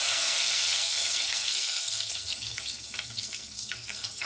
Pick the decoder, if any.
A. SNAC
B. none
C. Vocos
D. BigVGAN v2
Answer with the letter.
A